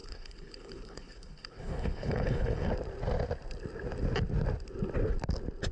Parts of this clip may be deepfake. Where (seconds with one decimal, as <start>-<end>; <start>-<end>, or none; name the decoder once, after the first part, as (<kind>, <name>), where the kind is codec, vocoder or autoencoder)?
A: 0.0-2.7 (codec, HILCodec)